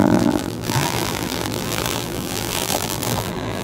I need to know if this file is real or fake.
fake